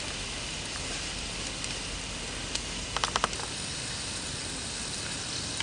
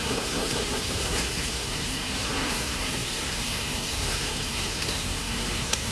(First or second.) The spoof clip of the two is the second